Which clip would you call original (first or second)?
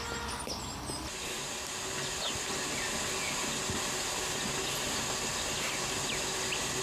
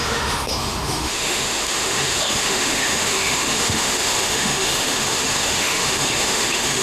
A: first